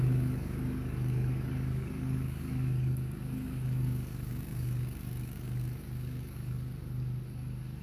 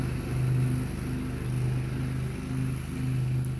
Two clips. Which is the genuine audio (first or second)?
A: second